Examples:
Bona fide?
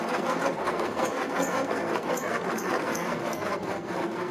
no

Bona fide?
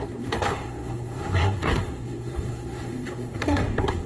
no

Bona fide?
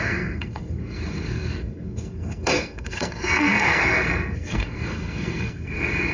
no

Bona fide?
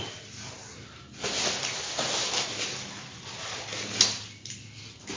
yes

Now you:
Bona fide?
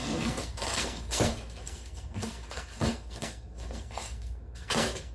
no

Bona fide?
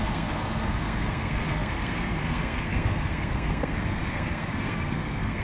no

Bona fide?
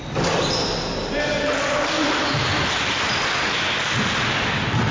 yes